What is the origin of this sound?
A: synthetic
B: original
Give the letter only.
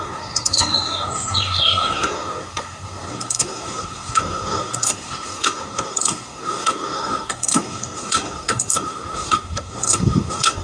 A